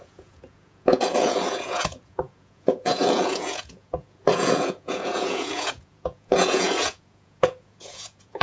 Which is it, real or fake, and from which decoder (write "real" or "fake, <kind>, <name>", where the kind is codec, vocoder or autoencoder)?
fake, vocoder, Vocos